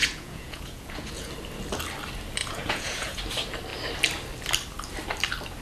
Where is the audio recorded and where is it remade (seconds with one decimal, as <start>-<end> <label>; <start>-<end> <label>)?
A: 0.0-1.3 remade; 1.3-2.4 recorded; 2.4-3.2 remade; 3.2-5.6 recorded

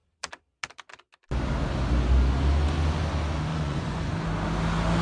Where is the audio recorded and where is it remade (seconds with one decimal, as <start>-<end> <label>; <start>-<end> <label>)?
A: 0.0-3.5 recorded; 3.5-4.1 remade; 4.1-5.0 recorded